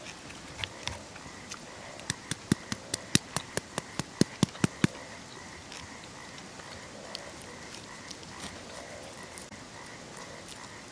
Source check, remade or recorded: recorded